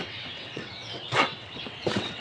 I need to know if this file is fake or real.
fake